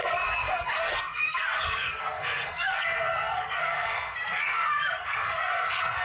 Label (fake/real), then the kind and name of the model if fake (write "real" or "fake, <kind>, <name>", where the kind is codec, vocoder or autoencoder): fake, codec, SNAC